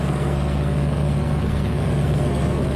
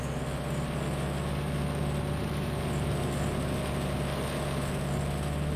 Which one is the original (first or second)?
second